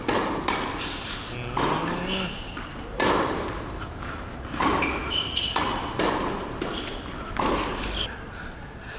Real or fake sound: real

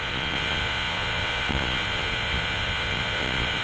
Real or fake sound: fake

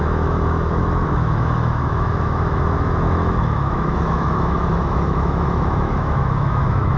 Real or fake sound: fake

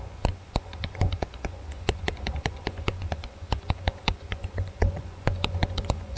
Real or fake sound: fake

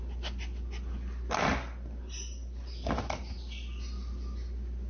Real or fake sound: real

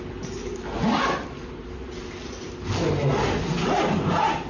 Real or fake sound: real